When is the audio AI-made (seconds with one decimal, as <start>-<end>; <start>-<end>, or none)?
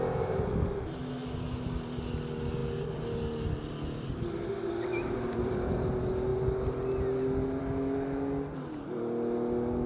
4.9-5.5